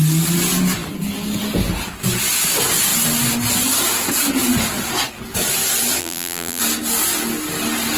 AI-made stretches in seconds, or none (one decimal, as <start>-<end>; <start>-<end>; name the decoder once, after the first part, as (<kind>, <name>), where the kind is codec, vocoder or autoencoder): 6.0-6.6 (vocoder, BigVGAN v2)